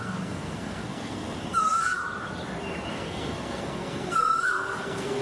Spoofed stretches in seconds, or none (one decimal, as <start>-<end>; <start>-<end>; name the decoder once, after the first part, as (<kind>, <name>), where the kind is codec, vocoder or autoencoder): 0.0-2.0 (codec, SNAC); 2.9-5.2